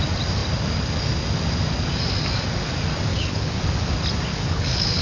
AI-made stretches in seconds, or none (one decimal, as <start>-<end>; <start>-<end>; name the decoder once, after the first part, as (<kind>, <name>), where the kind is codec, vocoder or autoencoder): 3.1-3.6 (codec, HILCodec); 4.3-5.0